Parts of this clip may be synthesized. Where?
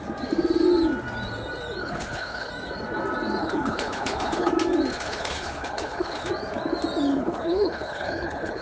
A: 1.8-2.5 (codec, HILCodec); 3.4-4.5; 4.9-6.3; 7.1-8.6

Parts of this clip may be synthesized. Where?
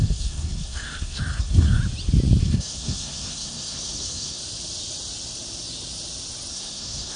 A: 0.0-1.8 (codec, SNAC); 2.4-4.4; 6.5-7.2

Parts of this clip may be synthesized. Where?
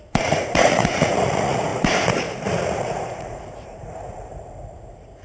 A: 0.0-5.2 (vocoder, Vocos)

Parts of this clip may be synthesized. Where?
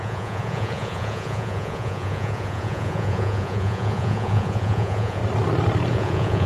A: 0.0-5.2 (vocoder, Vocos); 5.9-6.5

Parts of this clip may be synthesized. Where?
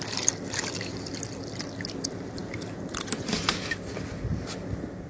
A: none